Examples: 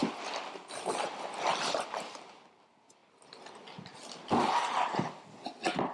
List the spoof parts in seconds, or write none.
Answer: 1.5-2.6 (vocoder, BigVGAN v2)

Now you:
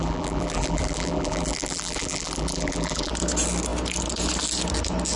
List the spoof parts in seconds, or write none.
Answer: 0.0-3.1 (vocoder, BigVGAN v2)

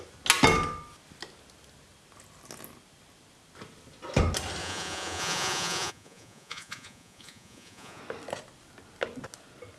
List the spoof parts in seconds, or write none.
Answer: 4.6-8.0 (vocoder, Vocos)

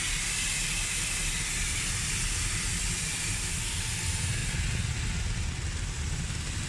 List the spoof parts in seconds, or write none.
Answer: none